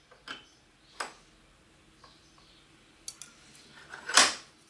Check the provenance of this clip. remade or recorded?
recorded